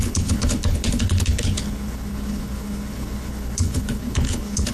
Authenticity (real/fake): fake